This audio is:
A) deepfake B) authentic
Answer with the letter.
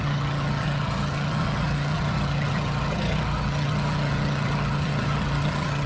A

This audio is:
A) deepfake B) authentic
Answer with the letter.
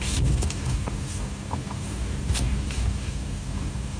A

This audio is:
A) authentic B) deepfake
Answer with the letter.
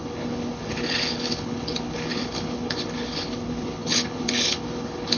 B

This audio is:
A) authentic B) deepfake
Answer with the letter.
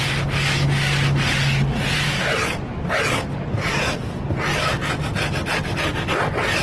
A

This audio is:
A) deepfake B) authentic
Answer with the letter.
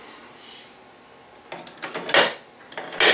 B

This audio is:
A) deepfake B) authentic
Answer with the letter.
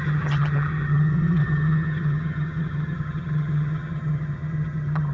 A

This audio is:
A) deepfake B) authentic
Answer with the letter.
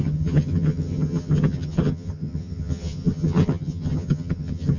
A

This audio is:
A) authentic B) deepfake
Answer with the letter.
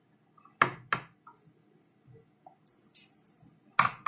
A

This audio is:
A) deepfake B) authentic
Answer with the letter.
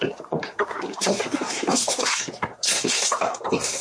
A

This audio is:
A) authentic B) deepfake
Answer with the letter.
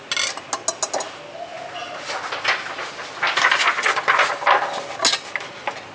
A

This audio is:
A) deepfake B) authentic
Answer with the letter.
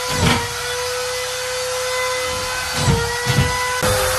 B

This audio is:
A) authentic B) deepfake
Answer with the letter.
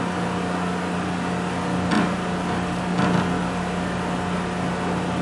A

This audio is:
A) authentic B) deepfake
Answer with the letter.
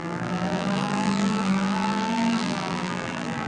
B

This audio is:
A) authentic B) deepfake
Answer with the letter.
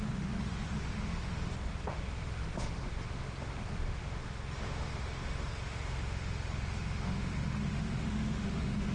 B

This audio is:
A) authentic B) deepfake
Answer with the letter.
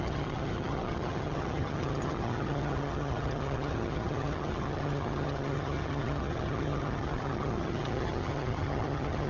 B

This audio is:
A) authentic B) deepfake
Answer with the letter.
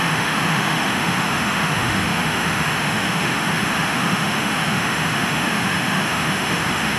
B